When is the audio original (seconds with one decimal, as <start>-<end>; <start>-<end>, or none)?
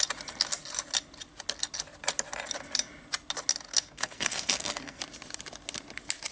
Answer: 0.0-3.7; 5.0-6.3